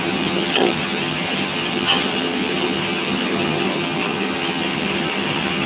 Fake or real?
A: fake